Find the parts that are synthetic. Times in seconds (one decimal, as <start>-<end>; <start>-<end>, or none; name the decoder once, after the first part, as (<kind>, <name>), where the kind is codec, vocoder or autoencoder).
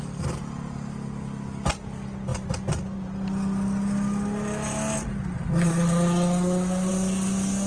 none